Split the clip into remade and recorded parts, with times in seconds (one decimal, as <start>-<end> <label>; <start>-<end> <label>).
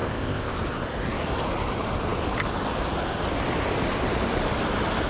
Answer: 0.0-0.6 remade; 0.6-5.1 recorded